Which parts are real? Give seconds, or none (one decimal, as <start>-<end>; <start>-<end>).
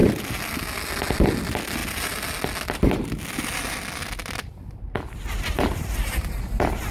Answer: 0.0-6.9